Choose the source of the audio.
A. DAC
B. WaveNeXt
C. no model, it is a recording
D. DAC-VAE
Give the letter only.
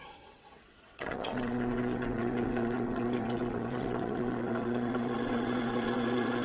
B